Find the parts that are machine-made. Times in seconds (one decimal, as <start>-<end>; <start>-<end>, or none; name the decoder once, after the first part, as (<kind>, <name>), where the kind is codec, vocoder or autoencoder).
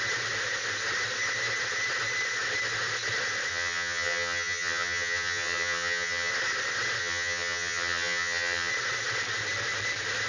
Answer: 3.5-6.3 (vocoder, HiFi-GAN); 7.0-8.7